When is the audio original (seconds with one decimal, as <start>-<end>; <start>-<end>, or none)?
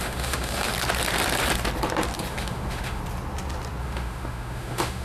0.7-2.3; 3.0-3.8